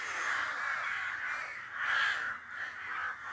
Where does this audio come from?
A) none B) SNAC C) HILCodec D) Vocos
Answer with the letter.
A